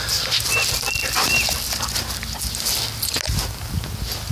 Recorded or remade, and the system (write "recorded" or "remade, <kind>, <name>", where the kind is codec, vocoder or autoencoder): recorded